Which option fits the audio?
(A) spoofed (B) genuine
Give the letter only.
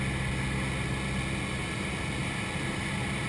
B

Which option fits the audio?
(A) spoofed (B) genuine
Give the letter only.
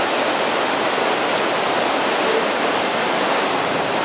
B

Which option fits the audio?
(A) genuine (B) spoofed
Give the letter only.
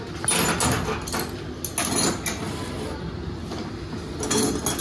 A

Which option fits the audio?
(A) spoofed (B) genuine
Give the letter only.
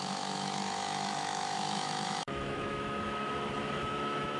A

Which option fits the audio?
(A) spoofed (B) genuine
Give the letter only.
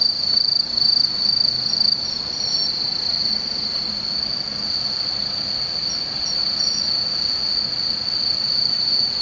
B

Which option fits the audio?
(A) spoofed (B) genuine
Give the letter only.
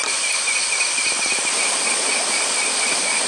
B